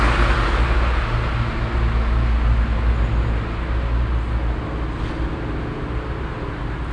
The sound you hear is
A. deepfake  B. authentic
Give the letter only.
B